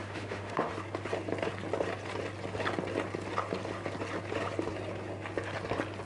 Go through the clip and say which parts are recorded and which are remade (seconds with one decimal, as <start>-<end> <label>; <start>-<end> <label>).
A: 0.0-0.7 remade; 0.7-6.1 recorded